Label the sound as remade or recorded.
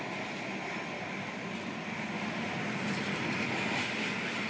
recorded